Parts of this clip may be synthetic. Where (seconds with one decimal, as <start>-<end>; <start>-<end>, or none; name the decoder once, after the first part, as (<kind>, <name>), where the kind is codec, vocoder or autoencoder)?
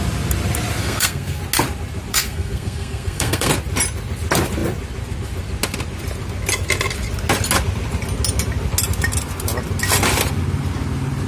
0.8-1.4 (codec, SNAC); 2.1-3.5